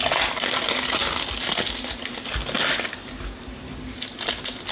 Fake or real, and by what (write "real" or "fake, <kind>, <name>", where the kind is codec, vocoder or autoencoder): real